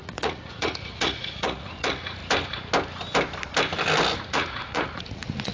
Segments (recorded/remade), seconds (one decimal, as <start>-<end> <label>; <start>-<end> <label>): 0.0-2.2 remade; 2.2-4.2 recorded; 4.2-5.5 remade